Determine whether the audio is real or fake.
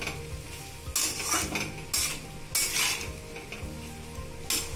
real